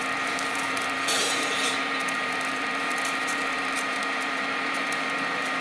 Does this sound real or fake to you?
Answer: fake